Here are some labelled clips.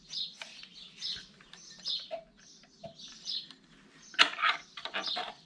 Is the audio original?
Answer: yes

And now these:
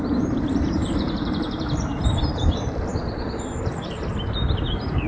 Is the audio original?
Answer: no